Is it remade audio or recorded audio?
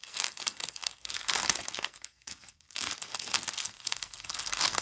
remade